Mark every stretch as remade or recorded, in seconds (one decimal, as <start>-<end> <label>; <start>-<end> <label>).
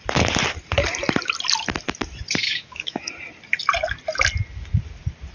0.0-2.4 recorded; 2.4-3.1 remade; 3.1-5.3 recorded